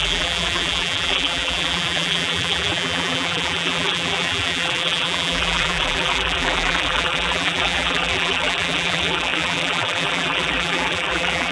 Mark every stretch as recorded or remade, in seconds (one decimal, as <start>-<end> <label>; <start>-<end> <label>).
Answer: 0.0-11.5 remade